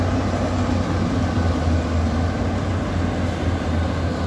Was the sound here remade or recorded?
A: recorded